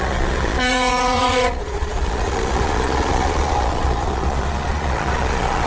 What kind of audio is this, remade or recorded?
remade